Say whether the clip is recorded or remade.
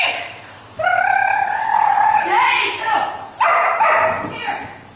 recorded